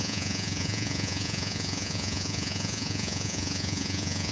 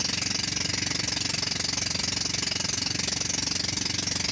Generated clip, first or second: first